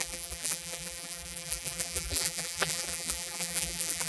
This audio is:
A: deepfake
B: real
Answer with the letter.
A